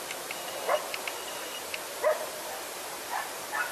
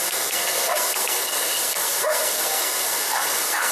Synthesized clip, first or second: second